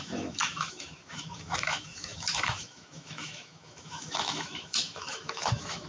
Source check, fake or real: fake